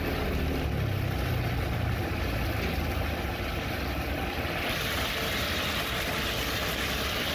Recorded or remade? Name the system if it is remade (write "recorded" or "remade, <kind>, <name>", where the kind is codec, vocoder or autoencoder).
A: recorded